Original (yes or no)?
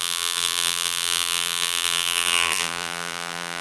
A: no